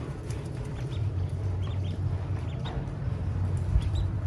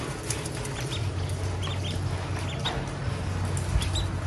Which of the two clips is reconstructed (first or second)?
first